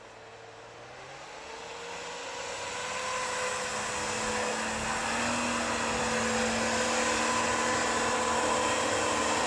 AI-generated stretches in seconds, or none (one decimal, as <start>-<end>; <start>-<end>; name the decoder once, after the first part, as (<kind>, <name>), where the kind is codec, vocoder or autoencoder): none